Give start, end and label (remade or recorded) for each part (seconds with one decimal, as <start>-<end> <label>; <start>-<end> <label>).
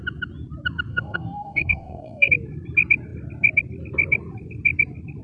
0.0-0.9 recorded; 0.9-2.3 remade; 2.3-5.2 recorded